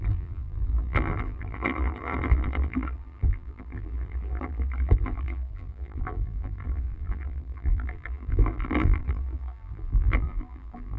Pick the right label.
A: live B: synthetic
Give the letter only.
B